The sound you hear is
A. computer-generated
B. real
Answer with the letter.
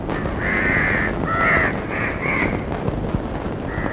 B